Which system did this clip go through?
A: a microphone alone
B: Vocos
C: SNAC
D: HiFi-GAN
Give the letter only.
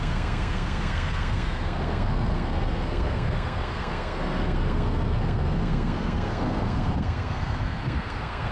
C